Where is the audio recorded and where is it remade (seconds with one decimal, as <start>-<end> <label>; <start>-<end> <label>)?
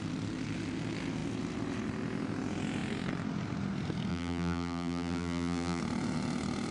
0.0-4.1 recorded; 4.1-5.8 remade; 5.8-6.7 recorded